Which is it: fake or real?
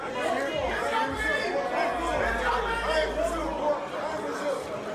real